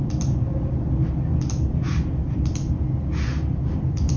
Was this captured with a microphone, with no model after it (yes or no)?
yes